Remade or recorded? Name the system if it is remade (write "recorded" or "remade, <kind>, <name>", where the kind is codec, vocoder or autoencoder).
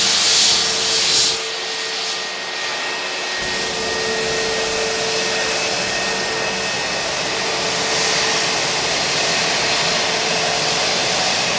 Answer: recorded